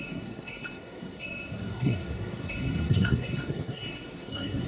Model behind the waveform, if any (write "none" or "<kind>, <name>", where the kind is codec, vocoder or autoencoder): codec, SNAC